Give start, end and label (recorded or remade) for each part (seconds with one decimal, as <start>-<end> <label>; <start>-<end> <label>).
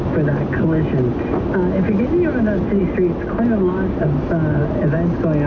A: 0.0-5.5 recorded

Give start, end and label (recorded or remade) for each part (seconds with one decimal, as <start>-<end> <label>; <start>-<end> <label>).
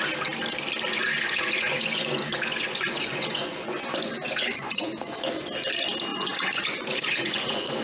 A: 0.0-0.9 recorded; 0.9-5.5 remade; 5.5-6.1 recorded; 6.1-7.8 remade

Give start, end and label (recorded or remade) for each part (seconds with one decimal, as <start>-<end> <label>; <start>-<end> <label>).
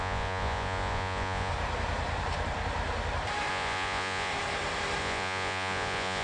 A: 0.0-1.5 remade; 1.5-3.5 recorded; 3.5-4.3 remade; 4.3-5.0 recorded; 5.0-6.2 remade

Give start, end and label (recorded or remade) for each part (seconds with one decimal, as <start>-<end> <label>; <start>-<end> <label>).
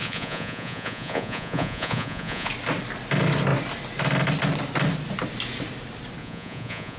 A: 0.0-2.5 remade; 2.5-6.2 recorded; 6.2-7.0 remade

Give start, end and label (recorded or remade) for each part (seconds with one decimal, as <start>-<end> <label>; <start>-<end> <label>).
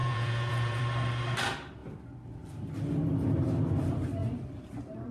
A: 0.0-0.8 remade; 0.8-5.1 recorded